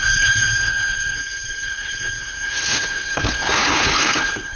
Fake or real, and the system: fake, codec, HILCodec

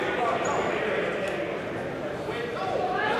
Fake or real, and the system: real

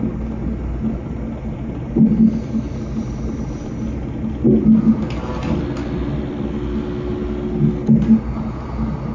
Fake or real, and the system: real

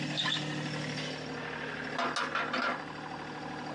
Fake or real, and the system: real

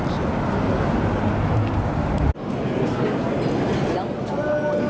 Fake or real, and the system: real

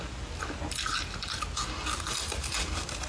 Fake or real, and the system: real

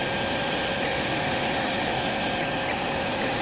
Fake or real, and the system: real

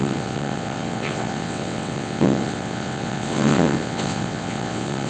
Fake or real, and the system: fake, vocoder, WaveNeXt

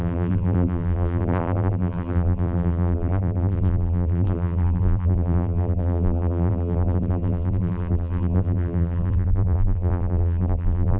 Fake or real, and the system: fake, vocoder, BigVGAN v2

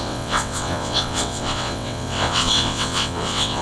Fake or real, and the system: fake, vocoder, WaveNeXt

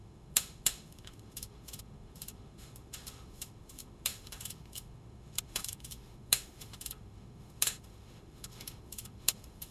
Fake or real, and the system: fake, autoencoder, DAC-VAE